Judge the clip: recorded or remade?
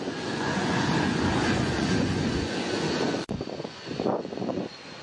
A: remade